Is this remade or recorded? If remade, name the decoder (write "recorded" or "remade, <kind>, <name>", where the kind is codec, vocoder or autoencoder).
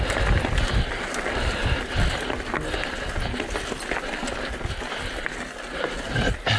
recorded